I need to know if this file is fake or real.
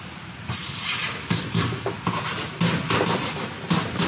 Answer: real